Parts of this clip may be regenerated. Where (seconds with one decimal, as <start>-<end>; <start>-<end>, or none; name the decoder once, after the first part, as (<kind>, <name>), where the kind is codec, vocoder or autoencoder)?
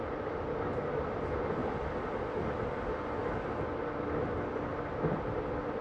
none